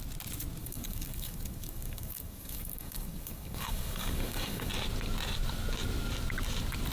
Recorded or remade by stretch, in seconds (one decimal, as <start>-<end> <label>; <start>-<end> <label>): 0.0-0.6 recorded; 0.6-4.7 remade; 4.7-6.9 recorded